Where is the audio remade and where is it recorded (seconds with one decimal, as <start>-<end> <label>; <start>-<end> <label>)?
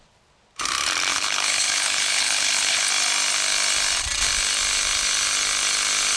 0.0-1.1 recorded; 1.1-2.9 remade; 2.9-6.2 recorded